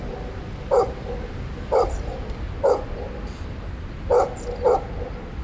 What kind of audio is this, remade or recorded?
recorded